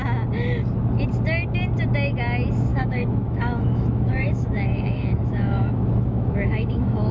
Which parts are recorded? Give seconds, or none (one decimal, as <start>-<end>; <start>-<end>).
0.0-2.7